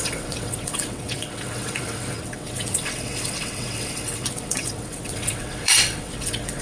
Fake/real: fake